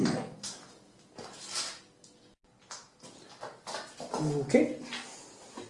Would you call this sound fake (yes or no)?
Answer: no